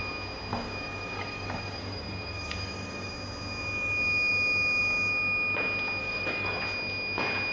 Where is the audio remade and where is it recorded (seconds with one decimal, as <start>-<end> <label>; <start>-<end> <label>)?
0.0-0.5 recorded; 0.5-3.1 remade; 3.1-6.0 recorded; 6.0-6.6 remade; 6.6-7.5 recorded